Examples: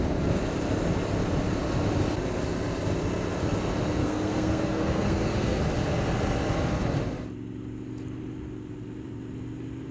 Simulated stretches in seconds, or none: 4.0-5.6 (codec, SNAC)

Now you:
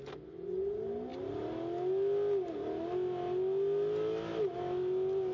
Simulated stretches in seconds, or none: none